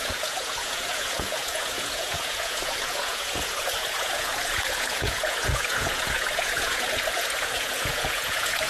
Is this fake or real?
fake